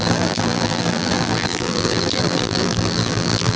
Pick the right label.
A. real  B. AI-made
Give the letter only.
B